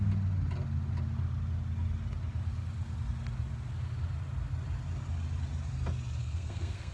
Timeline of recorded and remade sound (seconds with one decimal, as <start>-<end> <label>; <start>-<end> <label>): 0.0-6.2 recorded; 6.2-6.9 remade